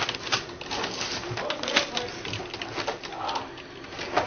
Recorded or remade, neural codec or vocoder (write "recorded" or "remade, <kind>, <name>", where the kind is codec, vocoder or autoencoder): recorded